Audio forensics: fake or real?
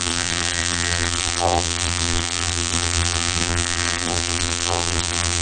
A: fake